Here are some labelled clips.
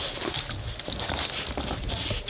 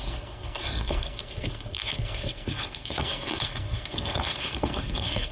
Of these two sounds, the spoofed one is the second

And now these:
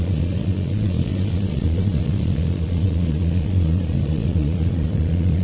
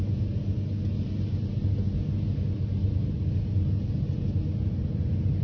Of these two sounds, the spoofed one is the first